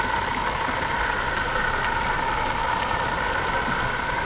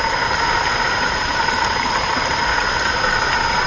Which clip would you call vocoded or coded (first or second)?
second